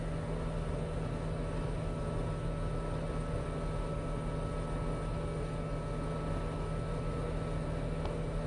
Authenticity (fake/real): real